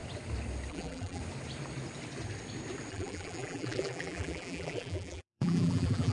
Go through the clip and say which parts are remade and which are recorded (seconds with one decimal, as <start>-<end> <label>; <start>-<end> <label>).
0.0-0.7 recorded; 0.7-1.2 remade; 1.2-2.9 recorded; 2.9-6.1 remade